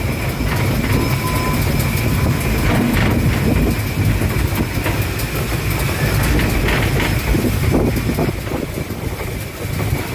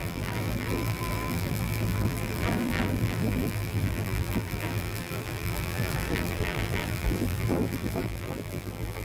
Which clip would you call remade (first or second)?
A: second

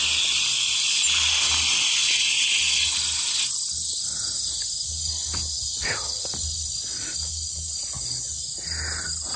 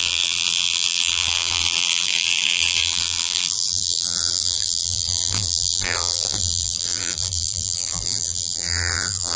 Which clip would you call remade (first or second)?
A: second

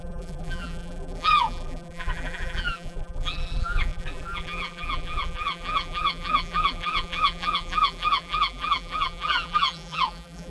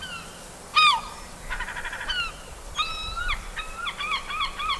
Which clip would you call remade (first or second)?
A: first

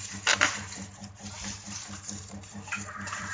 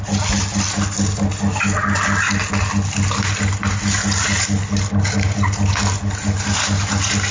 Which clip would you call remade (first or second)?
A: first